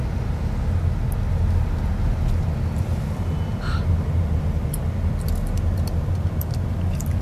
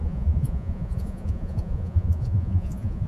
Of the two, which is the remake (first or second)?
second